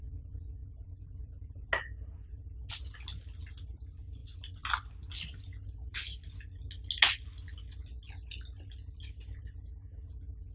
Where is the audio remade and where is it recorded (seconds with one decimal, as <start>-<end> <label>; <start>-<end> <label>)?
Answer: 0.0-10.5 recorded